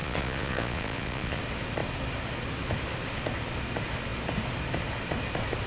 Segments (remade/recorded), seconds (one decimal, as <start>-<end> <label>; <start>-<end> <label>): 0.0-1.4 remade; 1.4-5.7 recorded

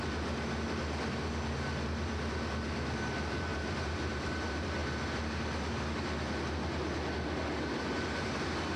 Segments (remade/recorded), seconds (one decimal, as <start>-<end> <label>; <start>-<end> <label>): 0.0-3.5 recorded; 3.5-4.3 remade; 4.3-8.8 recorded

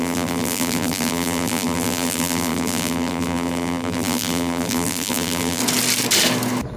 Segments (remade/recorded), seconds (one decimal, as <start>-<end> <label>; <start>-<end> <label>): 0.0-5.6 remade; 5.6-6.8 recorded